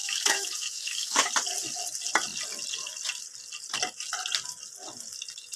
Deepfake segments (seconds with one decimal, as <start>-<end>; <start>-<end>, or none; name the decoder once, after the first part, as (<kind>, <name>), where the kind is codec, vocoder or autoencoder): 0.0-1.3 (autoencoder, DAC-VAE)

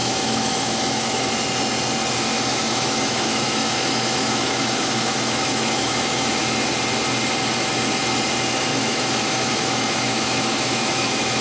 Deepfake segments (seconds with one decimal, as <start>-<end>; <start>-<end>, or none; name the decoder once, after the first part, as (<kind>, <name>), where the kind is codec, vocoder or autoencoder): 0.0-1.3 (autoencoder, DAC-VAE); 2.5-6.4; 8.7-11.4

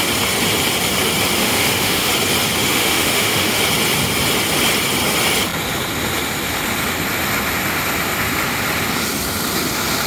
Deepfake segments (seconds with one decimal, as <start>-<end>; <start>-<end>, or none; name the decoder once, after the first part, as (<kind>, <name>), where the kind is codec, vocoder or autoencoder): 1.4-2.1 (autoencoder, DAC-VAE); 2.6-3.6

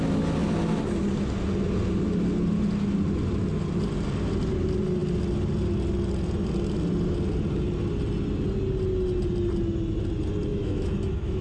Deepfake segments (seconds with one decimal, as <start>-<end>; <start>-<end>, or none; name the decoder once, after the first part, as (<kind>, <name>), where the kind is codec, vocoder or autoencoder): 10.5-11.4 (autoencoder, DAC-VAE)

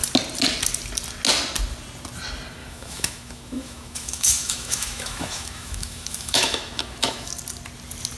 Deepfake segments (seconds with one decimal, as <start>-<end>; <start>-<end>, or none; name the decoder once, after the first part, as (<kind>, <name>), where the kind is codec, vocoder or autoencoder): 2.6-7.3 (autoencoder, DAC-VAE)

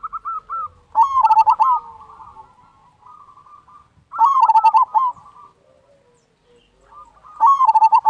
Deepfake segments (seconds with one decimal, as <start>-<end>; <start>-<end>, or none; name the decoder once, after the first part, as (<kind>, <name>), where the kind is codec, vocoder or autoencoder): none

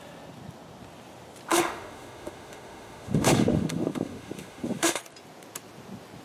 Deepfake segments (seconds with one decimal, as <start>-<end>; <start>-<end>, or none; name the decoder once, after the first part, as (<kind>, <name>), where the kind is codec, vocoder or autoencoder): 1.5-5.0 (autoencoder, DAC-VAE)